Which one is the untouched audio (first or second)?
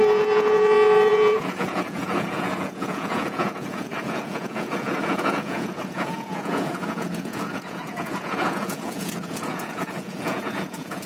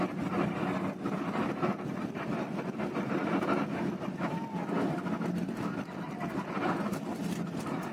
second